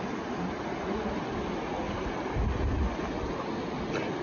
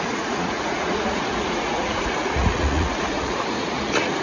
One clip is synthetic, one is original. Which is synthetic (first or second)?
second